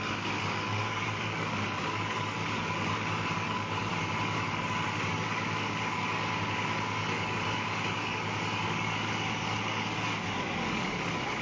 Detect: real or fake fake